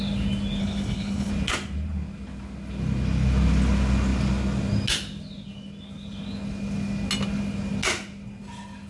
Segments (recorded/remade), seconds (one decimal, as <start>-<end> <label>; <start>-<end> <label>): 0.0-0.6 recorded; 0.6-1.3 remade; 1.3-8.9 recorded